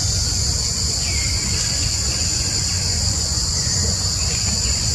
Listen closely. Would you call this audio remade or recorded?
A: remade